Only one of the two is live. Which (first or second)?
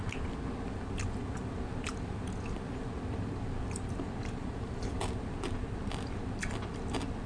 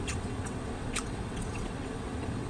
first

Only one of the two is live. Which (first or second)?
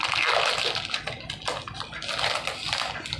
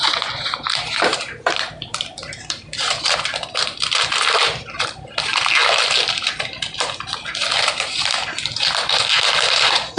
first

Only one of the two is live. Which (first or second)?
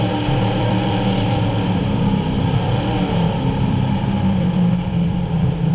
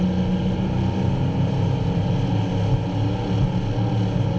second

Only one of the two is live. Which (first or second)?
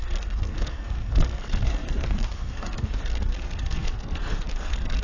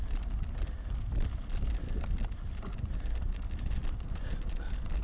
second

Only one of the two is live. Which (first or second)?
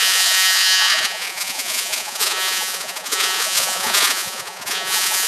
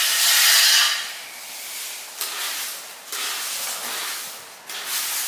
second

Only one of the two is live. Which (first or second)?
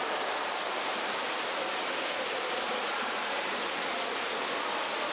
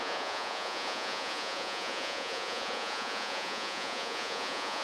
first